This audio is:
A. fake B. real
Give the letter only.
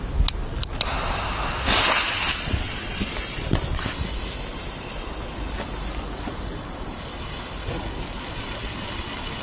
B